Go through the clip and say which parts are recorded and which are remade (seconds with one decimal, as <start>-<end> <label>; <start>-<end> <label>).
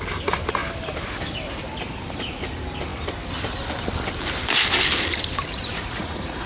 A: 0.0-5.5 recorded; 5.5-6.5 remade